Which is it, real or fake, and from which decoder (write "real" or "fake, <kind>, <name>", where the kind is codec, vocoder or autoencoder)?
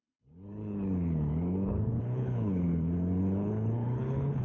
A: fake, codec, HILCodec